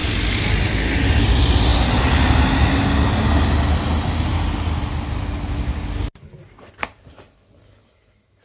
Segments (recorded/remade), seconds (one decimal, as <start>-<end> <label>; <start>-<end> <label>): 0.0-8.4 recorded